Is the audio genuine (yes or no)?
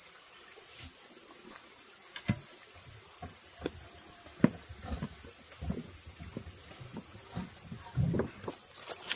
yes